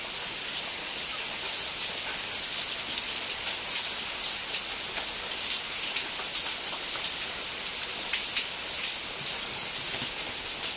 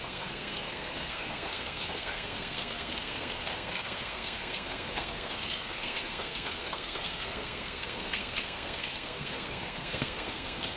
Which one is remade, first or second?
second